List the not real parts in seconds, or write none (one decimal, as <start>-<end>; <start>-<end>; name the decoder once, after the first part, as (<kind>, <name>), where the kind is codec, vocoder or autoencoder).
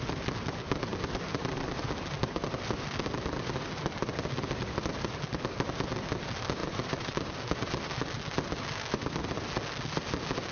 6.6-7.4 (vocoder, BigVGAN v2)